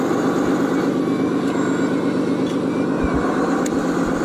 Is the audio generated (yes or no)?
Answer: no